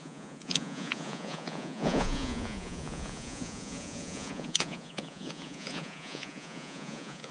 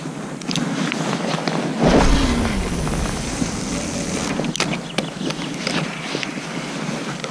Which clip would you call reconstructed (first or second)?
first